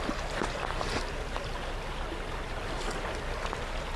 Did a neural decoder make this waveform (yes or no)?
no